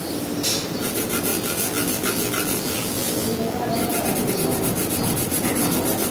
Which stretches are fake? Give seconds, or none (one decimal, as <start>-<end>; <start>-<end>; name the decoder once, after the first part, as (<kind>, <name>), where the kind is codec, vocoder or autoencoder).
1.3-3.7 (vocoder, BigVGAN v2)